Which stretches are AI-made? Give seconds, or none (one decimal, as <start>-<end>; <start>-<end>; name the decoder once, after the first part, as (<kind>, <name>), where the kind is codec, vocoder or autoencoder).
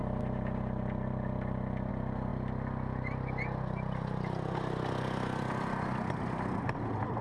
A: none